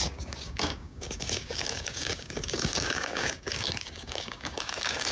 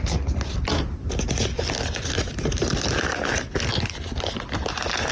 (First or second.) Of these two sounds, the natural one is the second